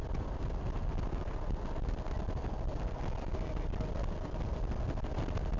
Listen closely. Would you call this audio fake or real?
real